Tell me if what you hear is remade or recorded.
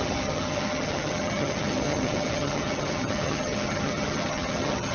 remade